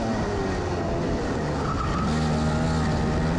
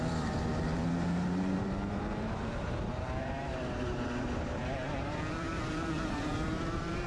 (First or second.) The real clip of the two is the first